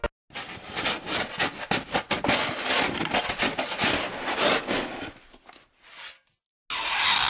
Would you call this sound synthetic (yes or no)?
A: no